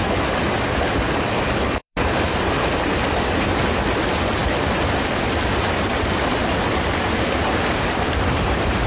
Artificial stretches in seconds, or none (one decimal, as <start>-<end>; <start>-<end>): 0.0-6.4; 7.2-8.9